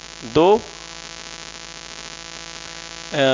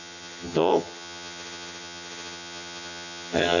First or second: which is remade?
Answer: second